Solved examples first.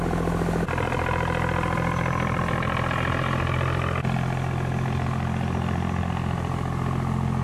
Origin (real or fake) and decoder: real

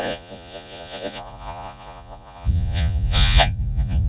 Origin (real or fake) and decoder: fake, vocoder, Vocos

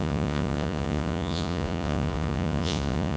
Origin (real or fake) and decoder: fake, vocoder, Vocos